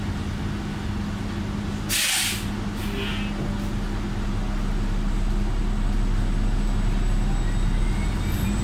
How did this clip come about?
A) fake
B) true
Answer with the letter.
B